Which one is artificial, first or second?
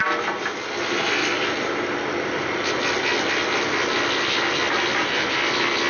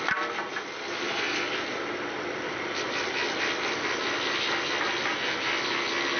second